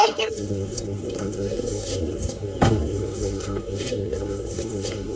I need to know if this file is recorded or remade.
remade